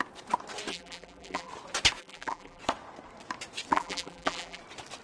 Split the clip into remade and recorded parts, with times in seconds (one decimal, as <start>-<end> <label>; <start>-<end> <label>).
0.0-0.7 recorded; 0.7-1.5 remade; 1.5-2.0 recorded; 2.0-2.6 remade; 2.6-3.7 recorded; 3.7-4.6 remade; 4.6-5.0 recorded